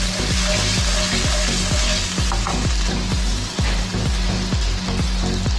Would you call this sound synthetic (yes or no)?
no